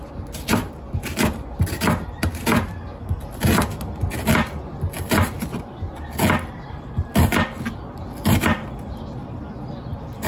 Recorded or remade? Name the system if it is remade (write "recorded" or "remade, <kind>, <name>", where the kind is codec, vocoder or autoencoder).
remade, vocoder, BigVGAN v2